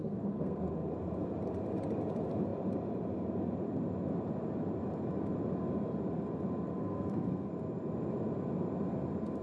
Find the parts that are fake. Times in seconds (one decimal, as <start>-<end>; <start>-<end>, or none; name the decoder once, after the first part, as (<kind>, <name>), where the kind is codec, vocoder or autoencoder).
0.0-0.7 (codec, SNAC); 6.7-7.5